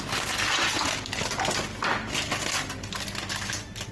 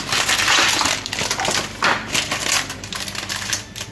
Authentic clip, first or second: first